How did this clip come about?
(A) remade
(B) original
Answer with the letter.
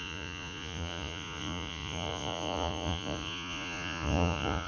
A